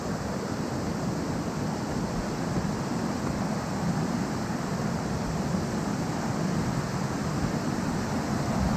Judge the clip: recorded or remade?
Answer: recorded